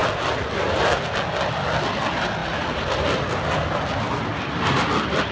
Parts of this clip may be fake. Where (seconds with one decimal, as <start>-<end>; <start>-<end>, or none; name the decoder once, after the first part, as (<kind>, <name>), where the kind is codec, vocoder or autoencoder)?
none